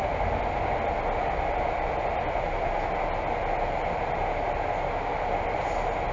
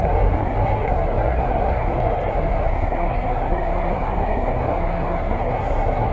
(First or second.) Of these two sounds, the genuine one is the first